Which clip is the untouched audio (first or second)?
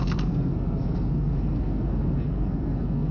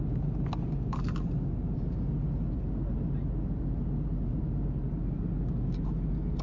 second